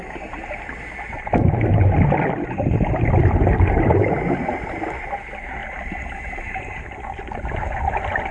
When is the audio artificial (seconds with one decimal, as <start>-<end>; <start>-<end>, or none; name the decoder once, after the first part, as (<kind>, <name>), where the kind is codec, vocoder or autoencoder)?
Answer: none